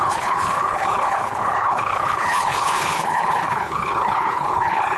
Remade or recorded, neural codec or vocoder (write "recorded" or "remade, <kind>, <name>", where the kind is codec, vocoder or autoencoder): remade, codec, HILCodec